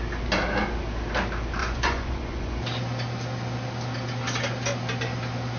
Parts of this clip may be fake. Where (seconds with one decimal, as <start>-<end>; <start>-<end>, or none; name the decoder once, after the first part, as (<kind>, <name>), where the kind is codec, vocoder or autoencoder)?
1.6-2.6 (vocoder, Vocos)